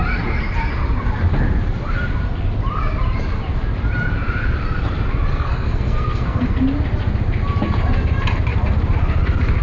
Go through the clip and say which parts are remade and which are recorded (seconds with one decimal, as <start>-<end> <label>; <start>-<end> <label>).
0.0-5.3 recorded; 5.3-6.6 remade; 6.6-9.6 recorded